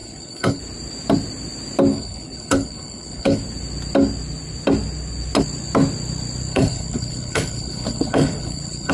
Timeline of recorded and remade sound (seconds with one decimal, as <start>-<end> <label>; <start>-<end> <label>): 0.0-0.6 remade; 0.6-1.9 recorded; 1.9-3.4 remade; 3.4-6.5 recorded; 6.5-8.9 remade